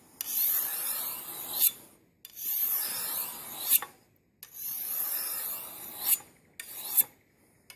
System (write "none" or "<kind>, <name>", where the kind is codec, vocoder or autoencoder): none